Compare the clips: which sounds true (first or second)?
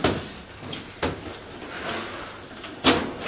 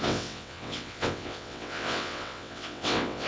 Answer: first